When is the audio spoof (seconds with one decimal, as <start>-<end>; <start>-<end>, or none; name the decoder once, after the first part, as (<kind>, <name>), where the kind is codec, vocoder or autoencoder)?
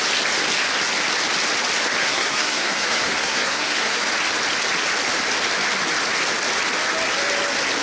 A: 2.0-4.0 (codec, SNAC)